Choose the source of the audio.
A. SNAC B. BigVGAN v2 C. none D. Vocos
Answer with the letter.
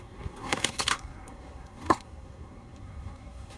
A